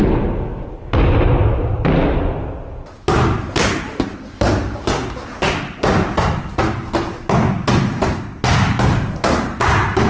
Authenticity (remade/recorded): recorded